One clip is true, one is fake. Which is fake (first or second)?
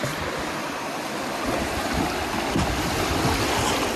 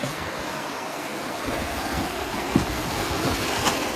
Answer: second